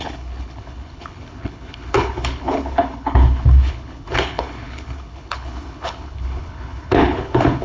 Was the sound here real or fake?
fake